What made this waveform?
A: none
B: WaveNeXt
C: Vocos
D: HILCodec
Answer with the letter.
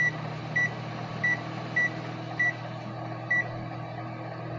A